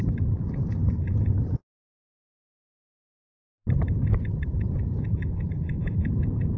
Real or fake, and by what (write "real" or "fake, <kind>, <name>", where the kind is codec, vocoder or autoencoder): fake, vocoder, BigVGAN v2